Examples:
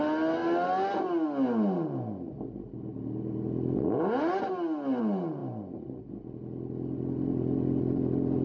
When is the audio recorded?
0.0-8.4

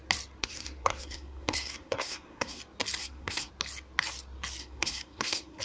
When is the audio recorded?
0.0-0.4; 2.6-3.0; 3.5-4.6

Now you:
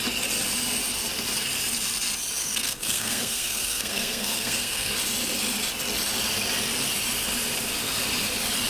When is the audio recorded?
0.0-2.4; 4.9-8.7

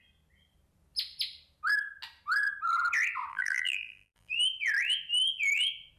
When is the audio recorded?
0.0-3.3; 4.3-6.0

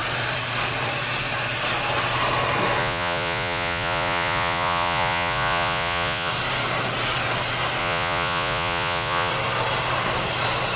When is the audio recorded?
0.0-2.8; 6.3-7.8; 9.3-10.8

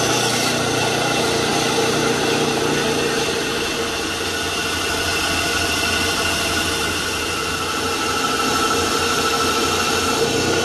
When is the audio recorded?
0.0-10.6

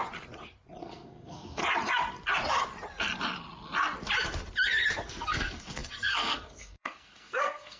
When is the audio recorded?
0.0-0.8; 1.6-5.1